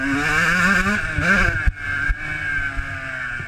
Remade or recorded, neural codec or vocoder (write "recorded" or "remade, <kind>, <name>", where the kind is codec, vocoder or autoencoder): recorded